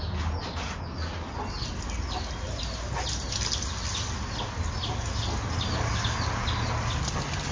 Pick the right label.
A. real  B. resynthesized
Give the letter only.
A